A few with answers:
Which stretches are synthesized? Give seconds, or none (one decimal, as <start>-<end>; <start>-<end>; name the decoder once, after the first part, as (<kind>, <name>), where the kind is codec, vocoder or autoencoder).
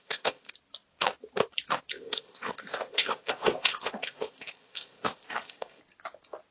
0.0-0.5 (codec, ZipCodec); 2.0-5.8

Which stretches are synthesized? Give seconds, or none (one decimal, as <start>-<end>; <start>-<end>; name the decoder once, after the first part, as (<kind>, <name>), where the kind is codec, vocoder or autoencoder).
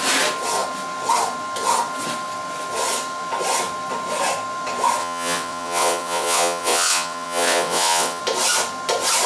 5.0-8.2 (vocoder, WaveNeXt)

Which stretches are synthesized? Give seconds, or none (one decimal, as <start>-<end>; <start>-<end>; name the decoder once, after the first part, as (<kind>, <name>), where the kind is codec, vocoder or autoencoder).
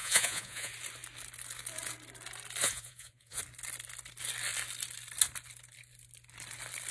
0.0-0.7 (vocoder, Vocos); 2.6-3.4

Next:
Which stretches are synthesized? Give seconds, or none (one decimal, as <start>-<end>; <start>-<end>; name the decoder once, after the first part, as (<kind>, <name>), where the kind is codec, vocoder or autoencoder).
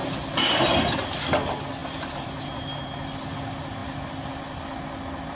none